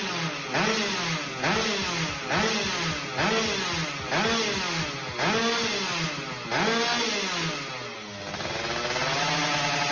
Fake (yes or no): no